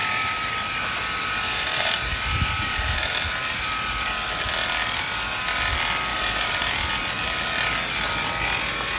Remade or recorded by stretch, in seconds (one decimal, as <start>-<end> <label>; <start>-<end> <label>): 0.0-3.1 remade; 3.1-6.1 recorded; 6.1-6.7 remade; 6.7-9.0 recorded